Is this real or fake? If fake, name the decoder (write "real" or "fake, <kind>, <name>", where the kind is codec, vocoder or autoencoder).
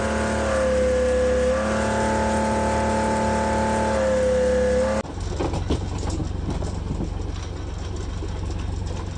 real